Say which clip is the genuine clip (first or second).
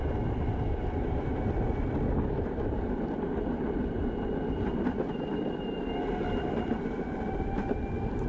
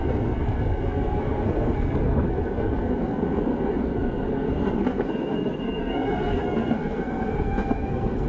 first